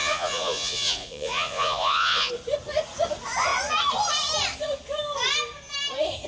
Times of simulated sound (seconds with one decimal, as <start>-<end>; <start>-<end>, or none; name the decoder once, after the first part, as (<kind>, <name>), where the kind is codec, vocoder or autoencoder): 0.0-2.3 (vocoder, Vocos)